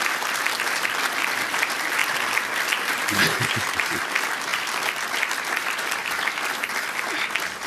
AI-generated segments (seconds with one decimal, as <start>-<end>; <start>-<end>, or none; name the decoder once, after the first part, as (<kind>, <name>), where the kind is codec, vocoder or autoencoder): 0.0-4.5 (vocoder, BigVGAN v2); 5.1-6.0; 6.6-7.7